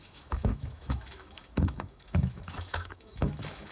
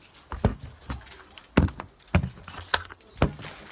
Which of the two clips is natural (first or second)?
second